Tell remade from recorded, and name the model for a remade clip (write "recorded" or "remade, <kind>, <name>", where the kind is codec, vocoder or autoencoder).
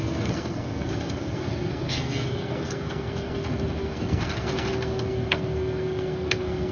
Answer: remade, codec, SNAC